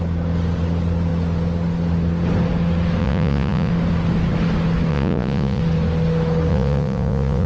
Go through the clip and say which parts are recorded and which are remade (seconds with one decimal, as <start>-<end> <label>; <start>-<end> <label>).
0.0-3.0 recorded; 3.0-3.7 remade; 3.7-4.9 recorded; 4.9-5.6 remade; 5.6-6.5 recorded; 6.5-7.5 remade